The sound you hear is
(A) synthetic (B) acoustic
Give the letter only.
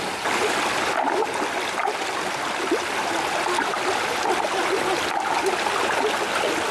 B